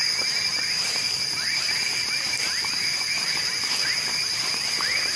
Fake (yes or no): no